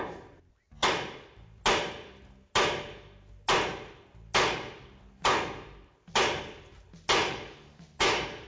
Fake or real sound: real